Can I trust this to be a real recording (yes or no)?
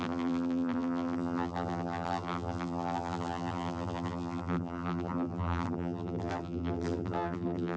no